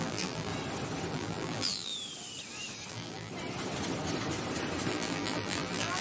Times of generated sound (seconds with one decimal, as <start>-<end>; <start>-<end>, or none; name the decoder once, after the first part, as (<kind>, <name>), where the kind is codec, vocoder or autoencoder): 0.0-0.5 (vocoder, BigVGAN v2); 1.1-1.9; 2.9-3.3; 4.9-6.0